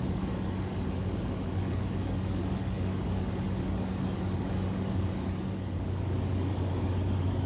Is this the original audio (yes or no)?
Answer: no